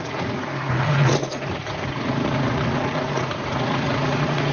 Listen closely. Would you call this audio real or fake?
fake